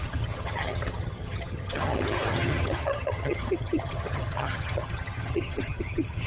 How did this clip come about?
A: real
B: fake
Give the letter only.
B